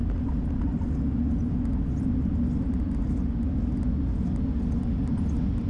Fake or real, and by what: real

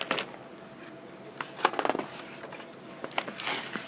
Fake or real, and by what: real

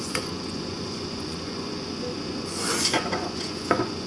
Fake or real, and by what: fake, vocoder, Vocos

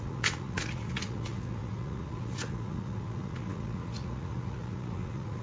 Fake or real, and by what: fake, vocoder, Vocos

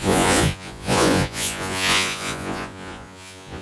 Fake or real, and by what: fake, vocoder, Vocos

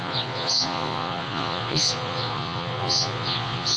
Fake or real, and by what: fake, vocoder, Vocos